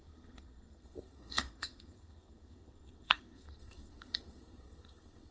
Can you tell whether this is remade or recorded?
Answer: remade